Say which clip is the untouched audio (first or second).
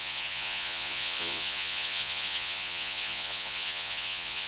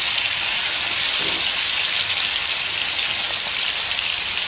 second